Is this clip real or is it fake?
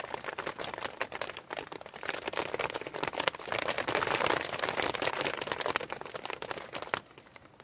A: real